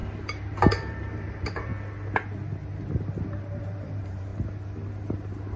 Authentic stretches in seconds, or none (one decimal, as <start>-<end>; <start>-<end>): 0.0-0.7; 1.7-3.6; 4.3-5.6